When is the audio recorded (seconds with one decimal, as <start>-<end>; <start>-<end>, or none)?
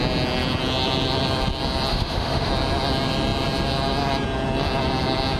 0.0-1.9; 2.5-5.4